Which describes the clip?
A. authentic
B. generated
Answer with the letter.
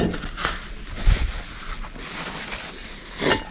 A